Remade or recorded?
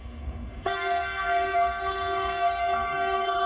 remade